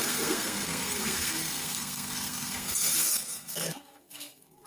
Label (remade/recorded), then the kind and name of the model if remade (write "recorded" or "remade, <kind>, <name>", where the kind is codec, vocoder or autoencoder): remade, codec, SNAC